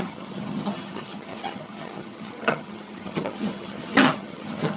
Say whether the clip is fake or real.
fake